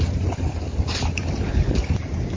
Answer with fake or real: real